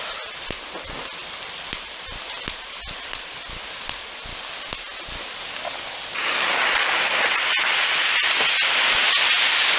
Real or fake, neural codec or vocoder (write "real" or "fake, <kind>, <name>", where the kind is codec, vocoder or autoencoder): real